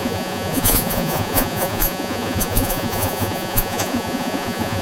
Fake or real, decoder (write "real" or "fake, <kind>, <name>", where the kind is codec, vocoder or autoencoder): fake, vocoder, Vocos